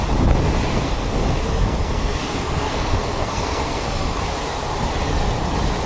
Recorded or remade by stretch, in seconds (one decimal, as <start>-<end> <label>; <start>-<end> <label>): 0.0-0.7 recorded; 0.7-4.2 remade; 4.2-5.9 recorded